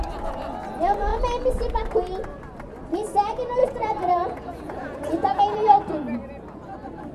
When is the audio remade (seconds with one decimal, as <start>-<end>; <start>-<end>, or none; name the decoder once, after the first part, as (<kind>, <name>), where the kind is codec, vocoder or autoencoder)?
3.6-5.4 (vocoder, Vocos)

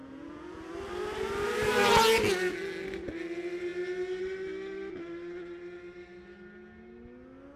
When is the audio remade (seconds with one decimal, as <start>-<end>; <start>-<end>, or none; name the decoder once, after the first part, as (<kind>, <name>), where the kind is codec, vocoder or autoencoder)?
0.0-0.7 (vocoder, Vocos)

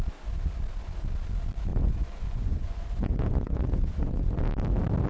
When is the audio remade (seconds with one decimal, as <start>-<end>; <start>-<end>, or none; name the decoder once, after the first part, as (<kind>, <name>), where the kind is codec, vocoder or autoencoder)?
1.7-4.4 (vocoder, Vocos)

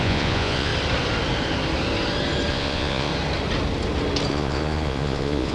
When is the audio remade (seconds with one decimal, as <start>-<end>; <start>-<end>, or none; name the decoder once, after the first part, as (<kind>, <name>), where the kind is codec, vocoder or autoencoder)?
0.0-0.7 (vocoder, Vocos); 2.5-3.1; 4.3-5.5

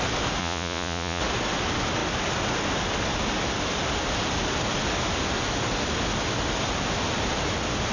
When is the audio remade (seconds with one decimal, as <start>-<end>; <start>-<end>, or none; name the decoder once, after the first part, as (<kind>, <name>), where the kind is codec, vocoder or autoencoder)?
0.4-1.2 (vocoder, Vocos)